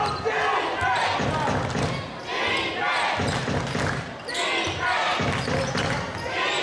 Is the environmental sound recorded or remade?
recorded